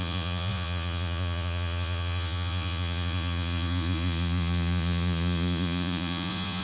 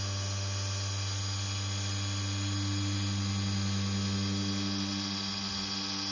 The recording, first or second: second